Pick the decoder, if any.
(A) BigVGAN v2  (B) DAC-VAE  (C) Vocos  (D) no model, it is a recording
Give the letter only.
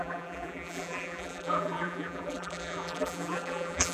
A